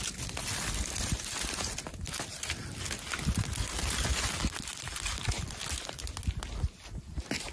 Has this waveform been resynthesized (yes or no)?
no